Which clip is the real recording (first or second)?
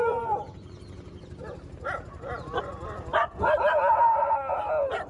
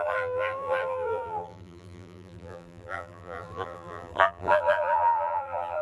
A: first